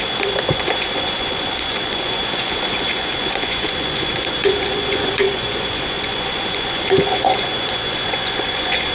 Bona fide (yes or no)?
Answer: no